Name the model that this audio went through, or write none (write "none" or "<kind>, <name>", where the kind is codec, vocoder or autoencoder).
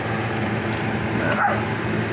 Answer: none